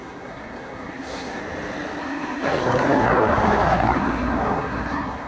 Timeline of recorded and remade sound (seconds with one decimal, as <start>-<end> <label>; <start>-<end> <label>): 0.0-1.4 remade; 1.4-2.0 recorded; 2.0-5.3 remade